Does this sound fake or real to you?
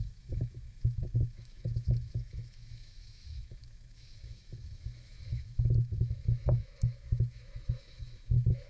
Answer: fake